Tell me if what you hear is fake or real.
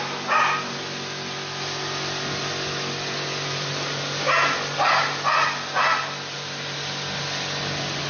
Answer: real